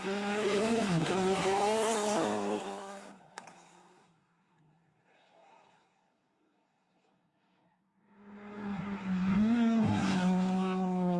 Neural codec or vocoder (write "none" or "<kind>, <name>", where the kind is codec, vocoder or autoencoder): codec, SNAC